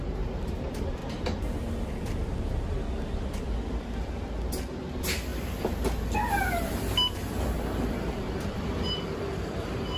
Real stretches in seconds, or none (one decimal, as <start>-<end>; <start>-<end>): 1.0-3.8; 5.3-7.9